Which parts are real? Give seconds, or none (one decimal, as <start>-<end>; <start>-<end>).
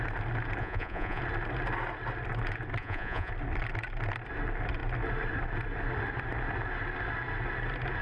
0.0-0.6; 1.2-2.8; 3.3-8.0